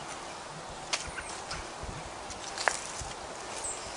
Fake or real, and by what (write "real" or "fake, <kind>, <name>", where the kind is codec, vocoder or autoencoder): real